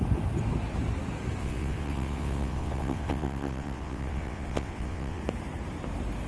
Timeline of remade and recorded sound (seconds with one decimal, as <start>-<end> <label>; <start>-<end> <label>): 0.0-1.4 recorded; 1.4-5.2 remade; 5.2-6.3 recorded